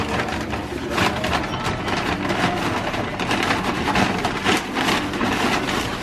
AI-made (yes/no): no